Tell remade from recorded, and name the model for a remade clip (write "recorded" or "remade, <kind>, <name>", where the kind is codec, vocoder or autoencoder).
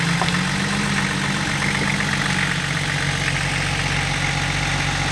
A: recorded